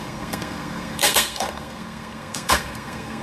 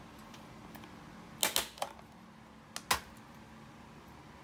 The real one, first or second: second